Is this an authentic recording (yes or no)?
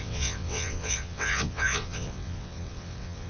no